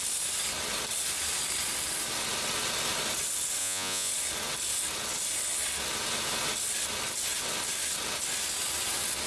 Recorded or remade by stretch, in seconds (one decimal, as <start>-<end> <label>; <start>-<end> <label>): 0.0-3.6 recorded; 3.6-4.1 remade; 4.1-9.3 recorded

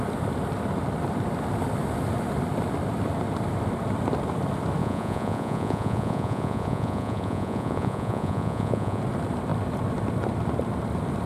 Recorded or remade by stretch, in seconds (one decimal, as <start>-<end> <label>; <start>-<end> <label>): 0.0-4.8 recorded; 4.8-9.0 remade; 9.0-11.3 recorded

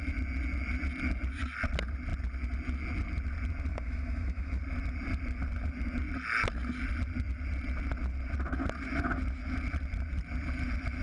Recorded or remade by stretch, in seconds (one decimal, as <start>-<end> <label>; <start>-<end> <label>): 0.0-3.7 recorded; 3.7-4.6 remade; 4.6-11.0 recorded